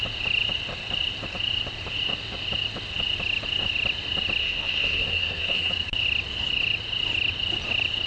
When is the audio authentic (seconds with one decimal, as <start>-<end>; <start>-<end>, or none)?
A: 0.0-4.4; 5.7-8.1